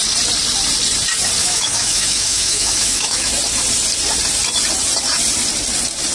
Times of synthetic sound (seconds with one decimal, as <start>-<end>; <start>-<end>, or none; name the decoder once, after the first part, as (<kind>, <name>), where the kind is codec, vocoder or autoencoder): 1.4-3.3 (autoencoder, DAC-VAE)